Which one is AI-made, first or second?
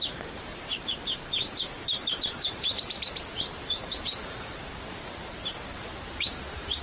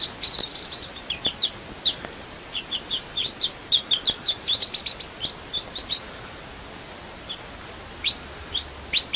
first